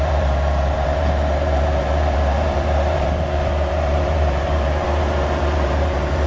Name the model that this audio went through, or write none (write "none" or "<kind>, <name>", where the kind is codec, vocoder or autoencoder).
vocoder, BigVGAN v2